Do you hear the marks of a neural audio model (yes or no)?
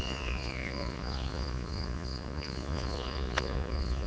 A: yes